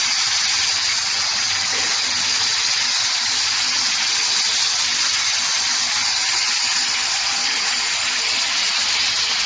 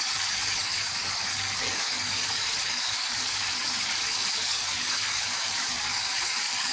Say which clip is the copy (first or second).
second